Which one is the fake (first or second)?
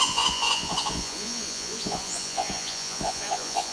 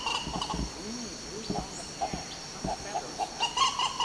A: first